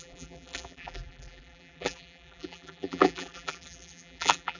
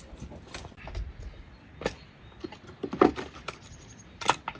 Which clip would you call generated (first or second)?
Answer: first